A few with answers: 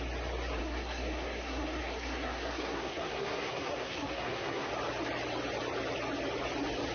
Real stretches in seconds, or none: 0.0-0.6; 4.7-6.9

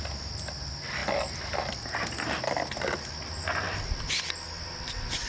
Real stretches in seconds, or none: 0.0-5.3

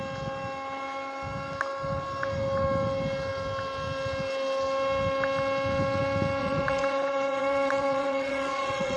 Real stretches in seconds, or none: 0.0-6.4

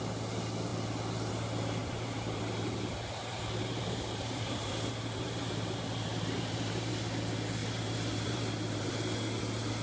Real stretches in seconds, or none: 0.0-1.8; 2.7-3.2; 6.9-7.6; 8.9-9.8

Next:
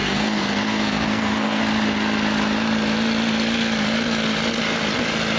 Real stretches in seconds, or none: 1.6-5.4